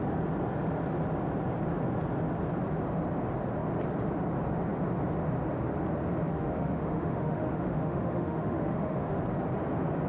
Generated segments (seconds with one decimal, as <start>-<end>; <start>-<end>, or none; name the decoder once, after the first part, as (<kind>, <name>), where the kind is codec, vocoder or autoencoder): 6.3-9.2 (autoencoder, DAC-VAE)

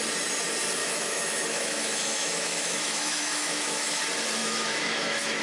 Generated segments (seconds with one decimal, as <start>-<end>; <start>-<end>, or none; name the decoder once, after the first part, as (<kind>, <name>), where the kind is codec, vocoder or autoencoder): 0.8-4.0 (autoencoder, DAC-VAE); 4.4-5.4

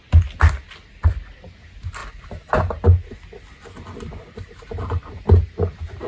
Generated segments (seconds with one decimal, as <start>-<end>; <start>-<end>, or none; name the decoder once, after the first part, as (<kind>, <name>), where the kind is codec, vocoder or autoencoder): none

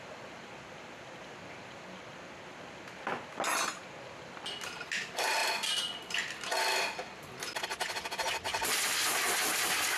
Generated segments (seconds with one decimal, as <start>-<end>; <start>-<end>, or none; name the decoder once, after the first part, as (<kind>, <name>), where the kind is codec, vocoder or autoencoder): none

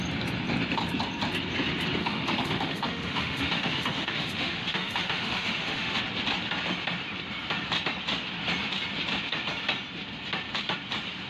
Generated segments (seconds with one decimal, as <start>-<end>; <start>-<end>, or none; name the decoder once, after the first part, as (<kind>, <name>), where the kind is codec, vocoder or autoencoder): 2.0-6.0 (autoencoder, DAC-VAE)

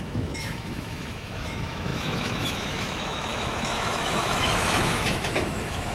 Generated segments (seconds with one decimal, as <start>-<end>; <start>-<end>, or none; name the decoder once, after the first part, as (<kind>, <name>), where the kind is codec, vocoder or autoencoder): 0.0-5.9 (autoencoder, DAC-VAE)

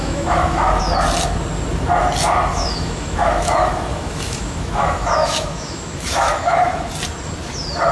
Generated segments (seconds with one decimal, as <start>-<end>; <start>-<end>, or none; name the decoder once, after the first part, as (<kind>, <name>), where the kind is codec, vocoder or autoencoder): 0.0-0.8 (autoencoder, DAC-VAE); 2.5-6.9